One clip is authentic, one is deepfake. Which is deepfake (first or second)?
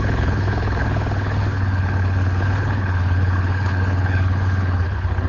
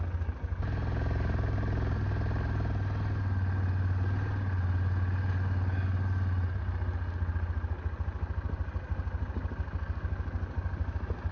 first